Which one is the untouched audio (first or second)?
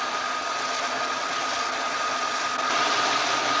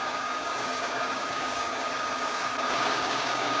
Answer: first